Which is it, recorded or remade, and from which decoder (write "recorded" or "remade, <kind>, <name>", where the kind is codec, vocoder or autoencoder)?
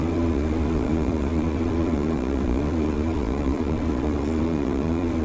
remade, vocoder, Vocos